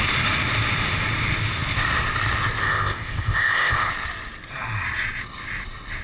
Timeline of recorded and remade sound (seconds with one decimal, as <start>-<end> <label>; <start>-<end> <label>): 0.0-2.6 recorded; 2.6-3.9 remade; 3.9-6.0 recorded